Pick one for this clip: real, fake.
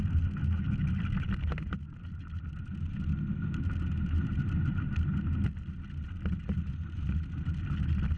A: real